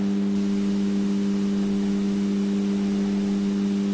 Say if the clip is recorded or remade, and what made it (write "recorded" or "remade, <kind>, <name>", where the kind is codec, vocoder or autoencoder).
recorded